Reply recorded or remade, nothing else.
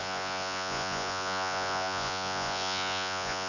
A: remade